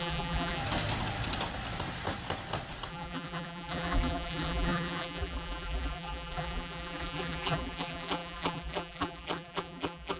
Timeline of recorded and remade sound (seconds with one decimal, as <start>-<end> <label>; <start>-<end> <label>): 0.0-0.6 remade; 0.6-2.9 recorded; 2.9-10.2 remade